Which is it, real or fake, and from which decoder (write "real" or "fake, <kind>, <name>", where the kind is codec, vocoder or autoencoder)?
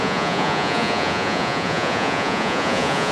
fake, vocoder, Vocos